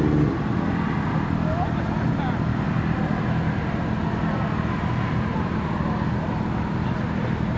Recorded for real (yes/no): yes